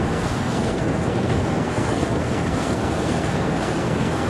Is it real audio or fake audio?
fake